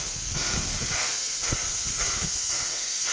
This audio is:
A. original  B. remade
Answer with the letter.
B